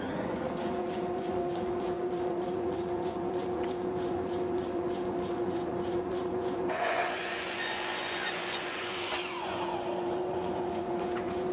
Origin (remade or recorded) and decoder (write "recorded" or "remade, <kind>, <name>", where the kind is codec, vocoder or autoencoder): remade, vocoder, Vocos